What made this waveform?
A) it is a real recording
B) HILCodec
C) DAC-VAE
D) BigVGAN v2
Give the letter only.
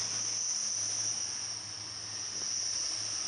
A